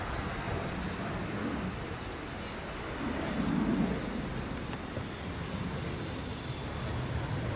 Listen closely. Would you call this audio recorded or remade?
recorded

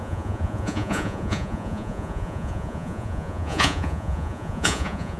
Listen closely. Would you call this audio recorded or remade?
remade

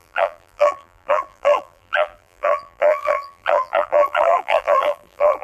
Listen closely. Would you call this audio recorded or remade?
remade